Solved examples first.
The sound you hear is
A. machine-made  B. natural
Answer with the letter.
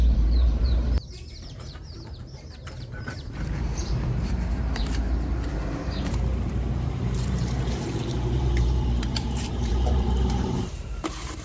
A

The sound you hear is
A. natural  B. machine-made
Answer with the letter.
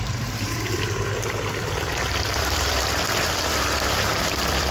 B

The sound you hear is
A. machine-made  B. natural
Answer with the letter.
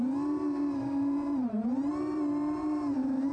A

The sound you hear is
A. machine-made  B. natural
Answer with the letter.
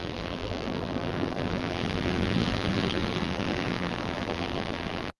A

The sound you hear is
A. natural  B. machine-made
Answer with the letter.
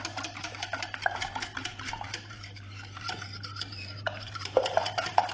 B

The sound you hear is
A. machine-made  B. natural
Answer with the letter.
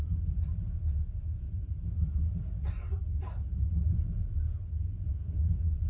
A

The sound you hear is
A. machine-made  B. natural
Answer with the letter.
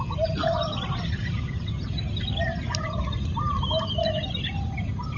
A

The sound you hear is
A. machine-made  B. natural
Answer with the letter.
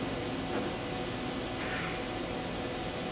B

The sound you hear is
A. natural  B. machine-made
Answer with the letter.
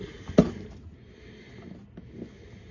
A